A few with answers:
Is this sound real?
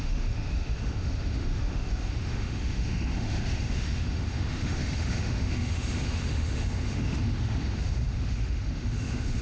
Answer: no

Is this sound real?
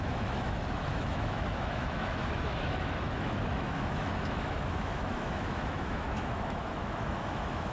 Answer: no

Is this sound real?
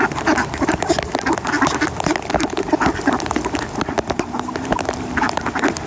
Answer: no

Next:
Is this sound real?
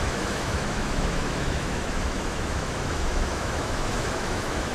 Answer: no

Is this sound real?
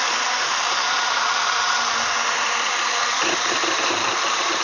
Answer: no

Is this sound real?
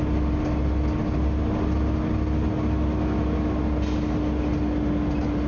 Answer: yes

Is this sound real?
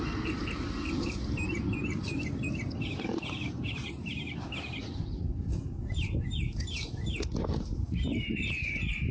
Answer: no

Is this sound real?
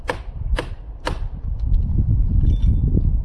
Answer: yes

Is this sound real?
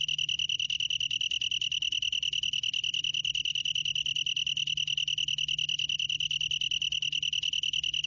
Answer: yes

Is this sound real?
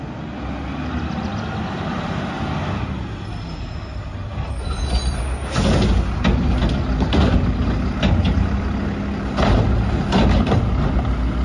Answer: yes